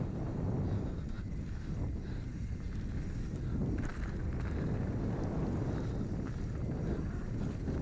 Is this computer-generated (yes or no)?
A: no